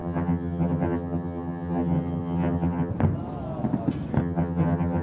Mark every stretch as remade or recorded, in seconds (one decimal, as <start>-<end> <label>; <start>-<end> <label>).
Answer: 0.0-2.9 remade; 2.9-4.2 recorded; 4.2-5.0 remade

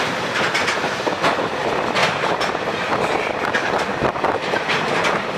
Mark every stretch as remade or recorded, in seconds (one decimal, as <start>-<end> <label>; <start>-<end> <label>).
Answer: 0.0-5.4 recorded

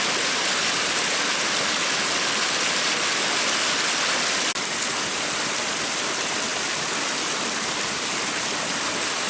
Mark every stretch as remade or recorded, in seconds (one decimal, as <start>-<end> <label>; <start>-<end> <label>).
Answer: 0.0-9.3 recorded